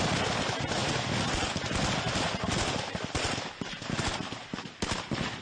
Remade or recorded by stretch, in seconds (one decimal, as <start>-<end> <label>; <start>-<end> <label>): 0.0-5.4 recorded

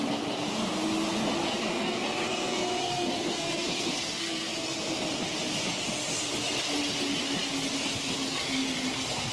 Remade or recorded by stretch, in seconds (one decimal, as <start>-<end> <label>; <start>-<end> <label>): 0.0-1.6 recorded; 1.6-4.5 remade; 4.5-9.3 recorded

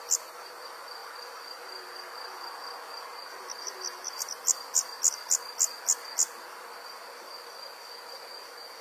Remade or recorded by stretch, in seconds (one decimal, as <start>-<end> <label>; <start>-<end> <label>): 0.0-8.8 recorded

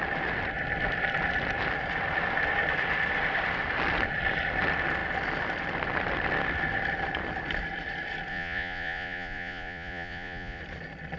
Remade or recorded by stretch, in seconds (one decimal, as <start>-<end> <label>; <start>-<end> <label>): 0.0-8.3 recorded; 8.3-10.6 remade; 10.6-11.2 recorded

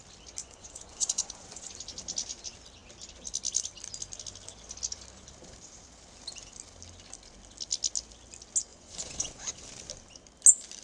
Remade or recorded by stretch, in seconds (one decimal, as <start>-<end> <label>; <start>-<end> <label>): 0.0-0.4 recorded; 0.4-1.7 remade; 1.7-8.7 recorded; 8.7-9.5 remade; 9.5-10.8 recorded